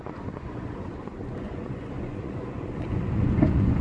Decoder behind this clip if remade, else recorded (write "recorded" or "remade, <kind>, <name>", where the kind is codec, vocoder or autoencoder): remade, vocoder, Vocos